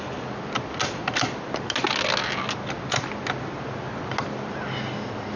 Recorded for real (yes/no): yes